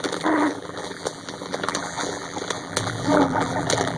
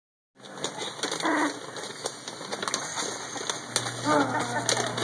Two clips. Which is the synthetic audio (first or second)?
first